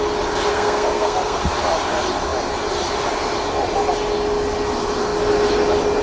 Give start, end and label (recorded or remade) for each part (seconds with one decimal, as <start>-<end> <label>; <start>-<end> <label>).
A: 0.0-0.5 recorded; 0.5-1.4 remade; 1.4-6.0 recorded